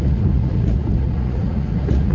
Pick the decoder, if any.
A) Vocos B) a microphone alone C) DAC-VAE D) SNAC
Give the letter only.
A